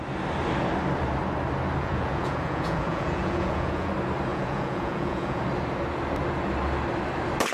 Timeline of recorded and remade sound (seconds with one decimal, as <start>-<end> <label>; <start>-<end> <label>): 0.0-1.8 recorded; 1.8-3.9 remade; 3.9-4.3 recorded; 4.3-5.4 remade; 5.4-7.5 recorded